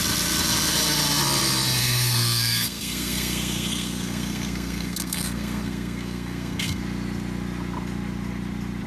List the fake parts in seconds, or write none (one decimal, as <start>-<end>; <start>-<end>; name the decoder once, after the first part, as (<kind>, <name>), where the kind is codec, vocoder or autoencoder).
1.8-6.8 (codec, SNAC)